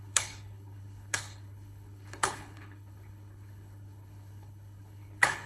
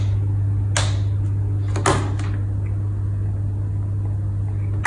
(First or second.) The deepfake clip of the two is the first